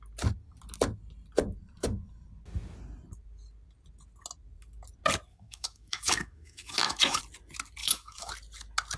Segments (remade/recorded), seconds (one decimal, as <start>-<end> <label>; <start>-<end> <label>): 0.0-5.3 recorded; 5.3-7.2 remade; 7.2-7.8 recorded; 7.8-8.3 remade; 8.3-9.0 recorded